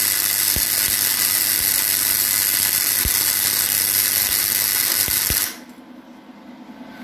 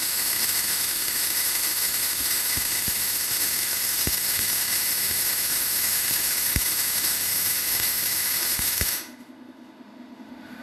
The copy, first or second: second